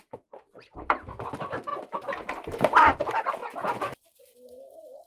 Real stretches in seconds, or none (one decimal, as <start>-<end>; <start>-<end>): 0.0-3.4; 3.9-5.1